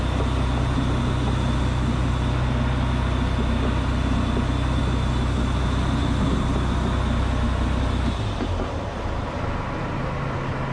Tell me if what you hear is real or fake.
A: real